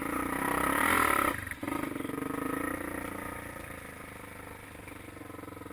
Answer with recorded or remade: recorded